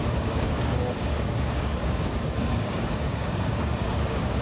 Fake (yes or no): yes